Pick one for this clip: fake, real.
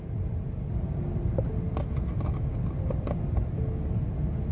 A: real